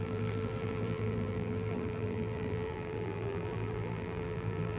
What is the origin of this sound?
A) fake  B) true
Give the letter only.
A